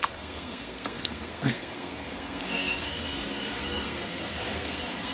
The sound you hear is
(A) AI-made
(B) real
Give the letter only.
A